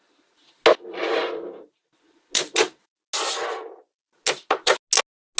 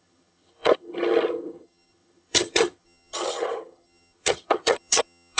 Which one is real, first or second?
first